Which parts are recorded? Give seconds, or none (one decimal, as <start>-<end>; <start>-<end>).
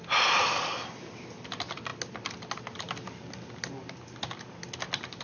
0.0-5.2